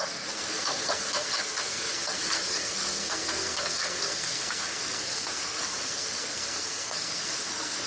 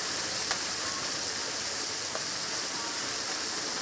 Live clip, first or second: second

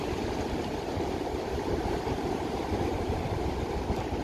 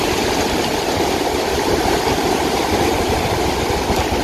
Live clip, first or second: second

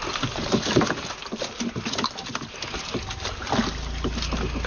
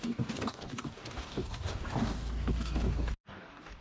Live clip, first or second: first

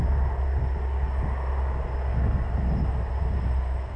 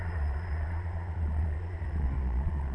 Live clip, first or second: first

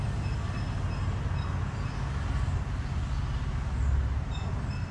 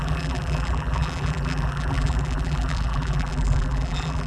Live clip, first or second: first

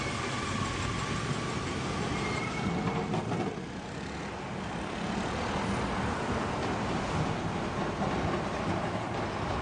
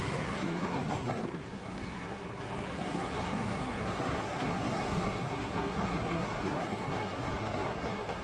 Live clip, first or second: first